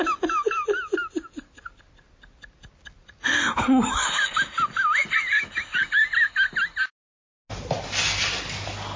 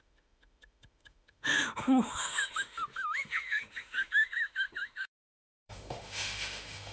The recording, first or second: first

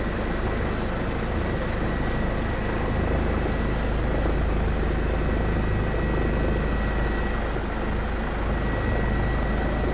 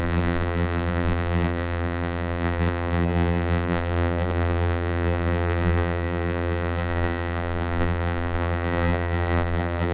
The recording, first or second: first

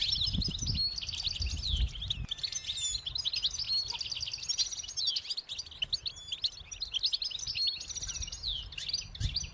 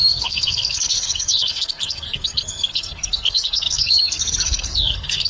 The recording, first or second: first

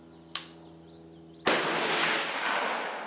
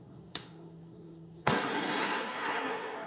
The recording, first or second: first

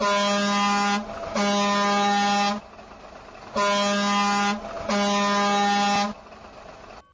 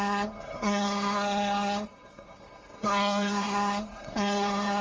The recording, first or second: first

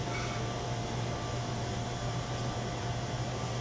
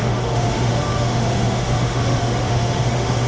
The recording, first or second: first